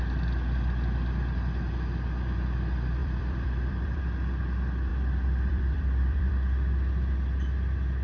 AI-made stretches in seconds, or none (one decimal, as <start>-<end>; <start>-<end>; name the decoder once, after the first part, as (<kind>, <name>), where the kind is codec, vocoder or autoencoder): 3.0-4.0 (vocoder, BigVGAN v2); 4.9-6.3